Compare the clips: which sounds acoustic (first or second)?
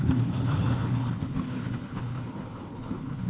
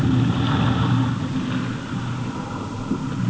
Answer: second